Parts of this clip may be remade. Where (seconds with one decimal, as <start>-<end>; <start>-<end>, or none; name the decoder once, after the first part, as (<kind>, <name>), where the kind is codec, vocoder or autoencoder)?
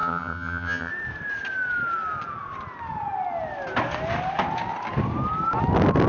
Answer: 0.0-0.9 (vocoder, HiFi-GAN)